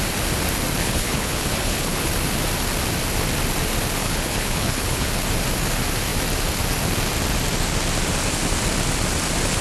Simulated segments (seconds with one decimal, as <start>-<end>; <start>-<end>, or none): 0.8-2.1; 4.0-5.1